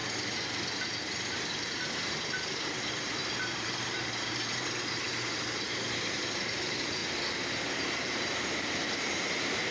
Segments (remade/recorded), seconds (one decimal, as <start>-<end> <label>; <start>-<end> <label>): 0.0-1.3 recorded; 1.3-7.0 remade; 7.0-7.7 recorded; 7.7-9.7 remade